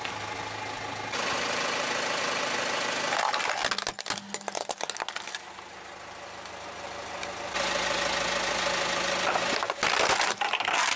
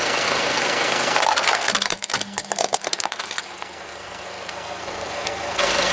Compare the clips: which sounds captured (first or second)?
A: first